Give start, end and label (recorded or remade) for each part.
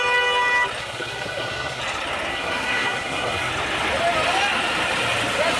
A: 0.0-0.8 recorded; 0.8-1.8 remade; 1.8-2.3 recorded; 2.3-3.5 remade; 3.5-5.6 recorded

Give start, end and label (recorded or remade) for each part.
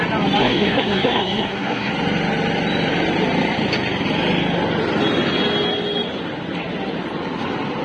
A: 0.0-0.4 recorded; 0.4-1.9 remade; 1.9-7.8 recorded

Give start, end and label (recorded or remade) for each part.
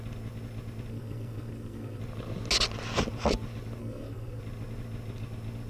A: 0.0-0.9 recorded; 0.9-2.0 remade; 2.0-3.8 recorded; 3.8-4.4 remade; 4.4-5.7 recorded